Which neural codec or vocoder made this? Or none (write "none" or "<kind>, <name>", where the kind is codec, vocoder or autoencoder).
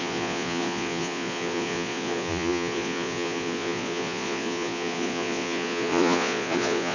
vocoder, Vocos